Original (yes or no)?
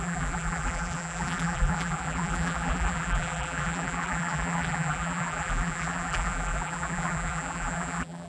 no